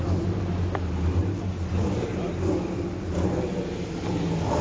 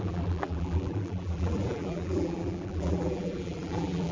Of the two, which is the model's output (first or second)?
second